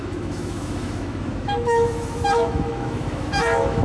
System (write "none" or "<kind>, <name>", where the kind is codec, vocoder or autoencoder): autoencoder, DAC-VAE